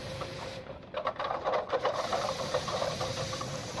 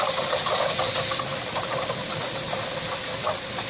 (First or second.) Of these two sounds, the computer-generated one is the first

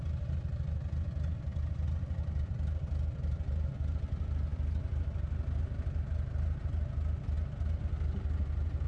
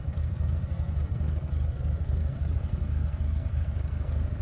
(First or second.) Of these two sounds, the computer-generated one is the second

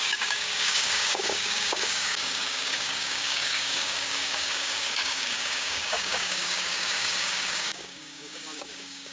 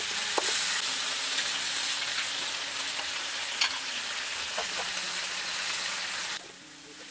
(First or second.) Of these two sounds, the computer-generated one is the first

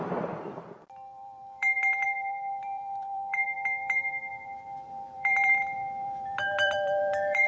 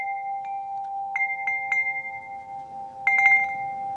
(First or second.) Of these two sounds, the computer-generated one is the first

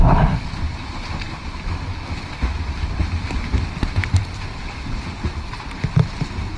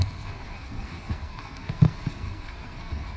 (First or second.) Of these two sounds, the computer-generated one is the second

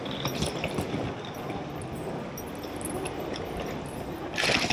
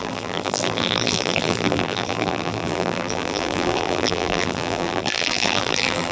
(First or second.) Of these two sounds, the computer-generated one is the second